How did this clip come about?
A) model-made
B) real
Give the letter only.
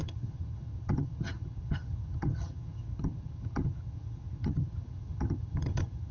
A